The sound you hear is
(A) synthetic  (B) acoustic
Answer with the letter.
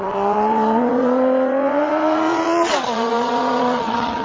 A